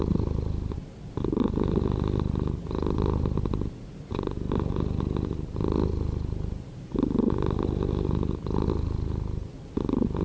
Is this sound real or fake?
real